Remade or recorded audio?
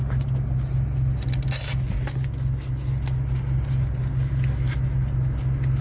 recorded